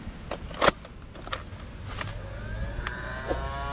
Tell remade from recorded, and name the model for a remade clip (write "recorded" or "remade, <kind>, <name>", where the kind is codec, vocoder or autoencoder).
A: recorded